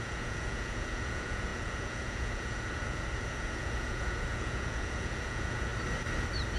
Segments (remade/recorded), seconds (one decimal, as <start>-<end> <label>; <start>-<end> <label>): 0.0-5.7 remade; 5.7-6.6 recorded